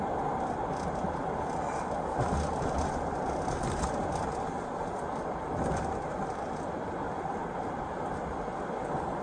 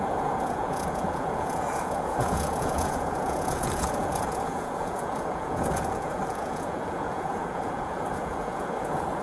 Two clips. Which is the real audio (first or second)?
first